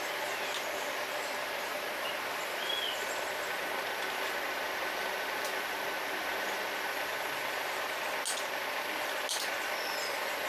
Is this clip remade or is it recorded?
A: recorded